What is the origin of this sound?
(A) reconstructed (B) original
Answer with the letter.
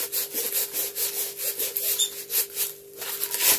B